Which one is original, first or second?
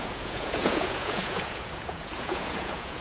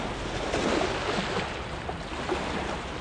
second